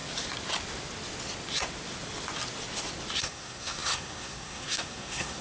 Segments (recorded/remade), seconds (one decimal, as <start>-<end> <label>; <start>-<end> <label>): 0.0-3.2 recorded; 3.2-5.4 remade